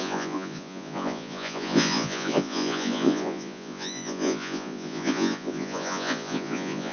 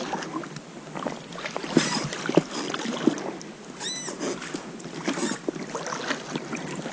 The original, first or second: second